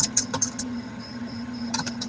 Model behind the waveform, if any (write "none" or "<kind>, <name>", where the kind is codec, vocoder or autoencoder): vocoder, HiFi-GAN